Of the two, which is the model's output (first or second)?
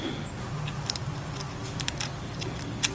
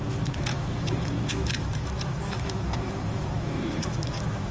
second